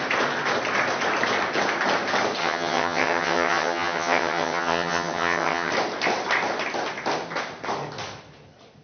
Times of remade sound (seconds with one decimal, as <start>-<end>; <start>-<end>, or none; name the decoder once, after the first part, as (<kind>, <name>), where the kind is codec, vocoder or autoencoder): 2.4-5.7 (vocoder, HiFi-GAN)